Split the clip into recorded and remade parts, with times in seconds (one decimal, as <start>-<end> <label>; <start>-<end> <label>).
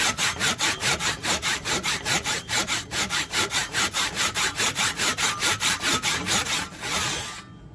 0.0-0.8 recorded; 0.8-5.2 remade; 5.2-5.9 recorded; 5.9-6.7 remade; 6.7-7.7 recorded